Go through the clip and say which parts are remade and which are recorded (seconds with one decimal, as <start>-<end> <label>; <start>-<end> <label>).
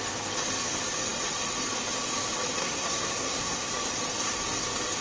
0.0-2.6 recorded; 2.6-3.7 remade; 3.7-5.0 recorded